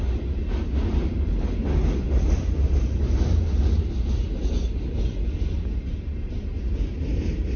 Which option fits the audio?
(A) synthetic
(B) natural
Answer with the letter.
B